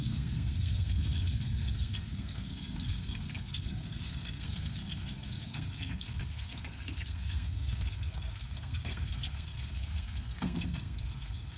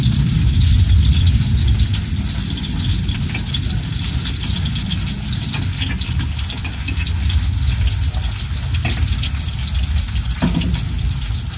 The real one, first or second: second